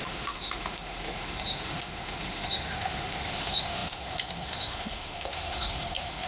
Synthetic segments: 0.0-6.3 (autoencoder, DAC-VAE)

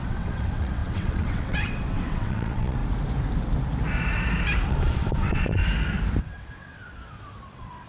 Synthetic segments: 0.0-2.8 (vocoder, WaveNeXt); 4.7-5.6; 6.2-7.9

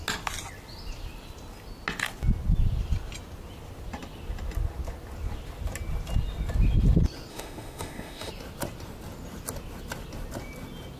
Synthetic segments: 7.3-8.3 (autoencoder, DAC-VAE)

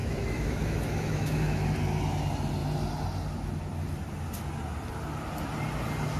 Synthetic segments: 0.0-1.7 (autoencoder, DAC-VAE)

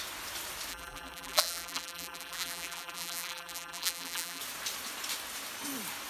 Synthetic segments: 0.7-4.4 (vocoder, BigVGAN v2)

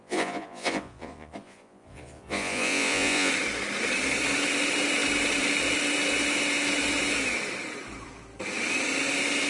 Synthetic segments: 0.0-3.3 (vocoder, Vocos)

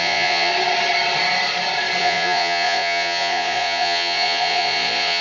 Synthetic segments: 0.0-0.5 (vocoder, Vocos); 2.0-5.2

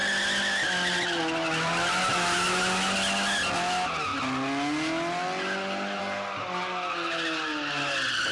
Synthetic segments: none